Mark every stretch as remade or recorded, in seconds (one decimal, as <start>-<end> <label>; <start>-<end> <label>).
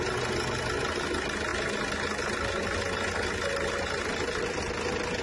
0.0-5.2 recorded